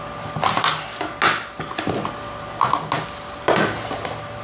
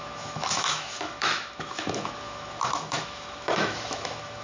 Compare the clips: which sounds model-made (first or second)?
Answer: second